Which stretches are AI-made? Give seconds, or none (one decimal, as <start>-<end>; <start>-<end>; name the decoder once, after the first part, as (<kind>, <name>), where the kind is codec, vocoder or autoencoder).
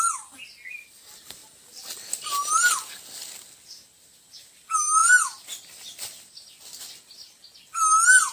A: none